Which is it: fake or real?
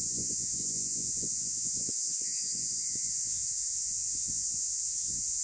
fake